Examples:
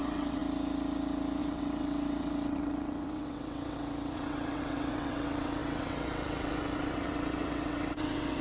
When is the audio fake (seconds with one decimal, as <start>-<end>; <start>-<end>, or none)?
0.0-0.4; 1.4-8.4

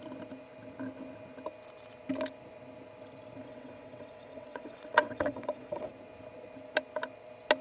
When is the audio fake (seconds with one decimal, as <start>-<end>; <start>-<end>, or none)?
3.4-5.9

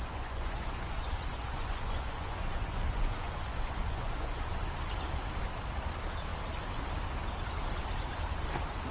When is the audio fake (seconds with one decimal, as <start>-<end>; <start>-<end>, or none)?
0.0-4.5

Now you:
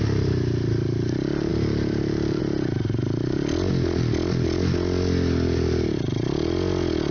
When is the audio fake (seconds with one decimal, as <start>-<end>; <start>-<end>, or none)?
none

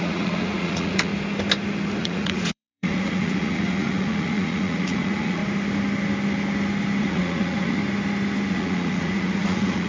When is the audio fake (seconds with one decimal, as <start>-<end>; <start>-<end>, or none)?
0.0-1.1; 2.0-5.4; 7.0-7.8; 8.5-9.9

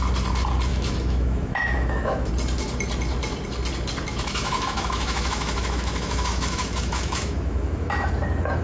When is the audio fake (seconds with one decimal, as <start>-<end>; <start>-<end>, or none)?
0.7-2.3; 4.1-8.1

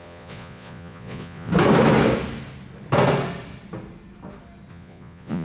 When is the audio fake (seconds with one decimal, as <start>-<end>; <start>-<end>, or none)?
0.0-1.5; 4.7-5.4